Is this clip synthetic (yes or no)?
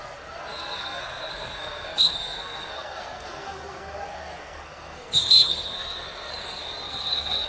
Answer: yes